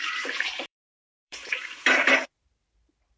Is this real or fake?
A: fake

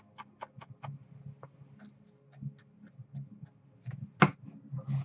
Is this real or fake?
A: real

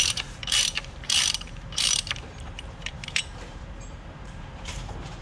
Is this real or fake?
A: fake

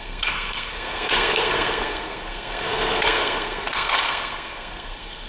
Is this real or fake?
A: fake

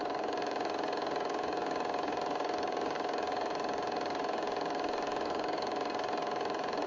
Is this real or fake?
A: fake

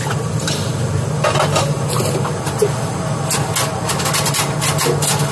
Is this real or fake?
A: real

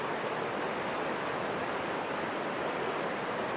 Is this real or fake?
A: real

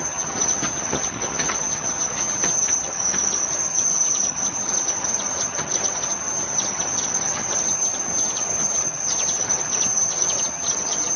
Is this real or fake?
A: fake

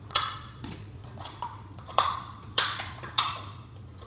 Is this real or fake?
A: fake